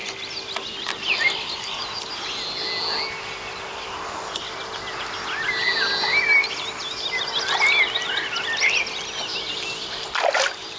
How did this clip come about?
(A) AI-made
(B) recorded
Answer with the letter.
B